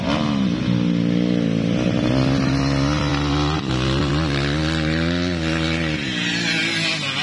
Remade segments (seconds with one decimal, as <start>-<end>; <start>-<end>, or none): none